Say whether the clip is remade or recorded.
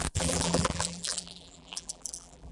remade